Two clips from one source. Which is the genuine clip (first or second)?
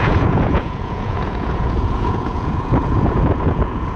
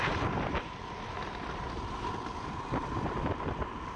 second